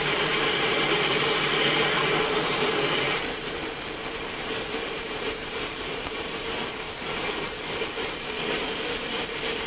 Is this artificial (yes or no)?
yes